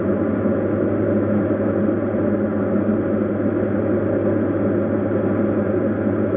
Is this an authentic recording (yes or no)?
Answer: yes